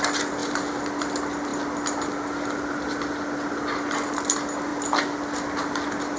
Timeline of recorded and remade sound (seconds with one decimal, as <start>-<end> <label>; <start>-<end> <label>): 0.0-6.2 recorded